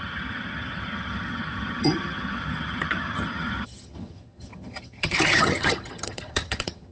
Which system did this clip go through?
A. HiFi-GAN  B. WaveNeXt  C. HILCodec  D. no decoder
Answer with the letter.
A